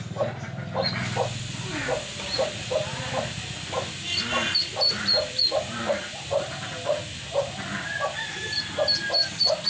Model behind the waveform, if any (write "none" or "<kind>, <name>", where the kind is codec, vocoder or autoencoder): none